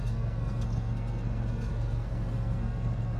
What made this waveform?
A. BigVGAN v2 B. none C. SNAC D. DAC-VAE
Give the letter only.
C